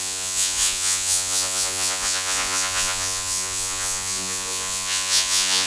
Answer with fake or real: fake